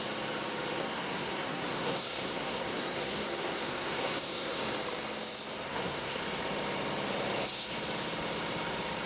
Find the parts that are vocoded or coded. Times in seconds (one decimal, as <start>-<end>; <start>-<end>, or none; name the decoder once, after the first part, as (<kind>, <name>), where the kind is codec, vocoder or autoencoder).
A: 0.8-4.6 (codec, SNAC); 5.7-6.2